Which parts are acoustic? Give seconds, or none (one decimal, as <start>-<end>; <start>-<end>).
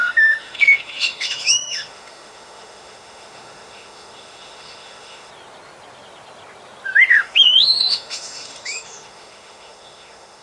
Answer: 5.3-7.1